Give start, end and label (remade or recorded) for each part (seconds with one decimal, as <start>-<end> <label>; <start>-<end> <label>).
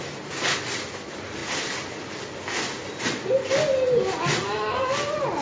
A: 0.0-5.4 recorded